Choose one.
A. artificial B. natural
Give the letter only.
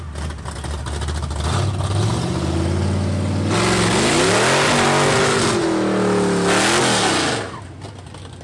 B